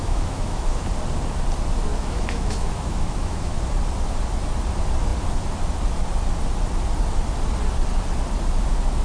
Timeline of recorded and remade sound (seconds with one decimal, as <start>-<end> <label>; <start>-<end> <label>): 0.0-0.9 remade; 0.9-1.9 recorded; 1.9-3.6 remade; 3.6-9.0 recorded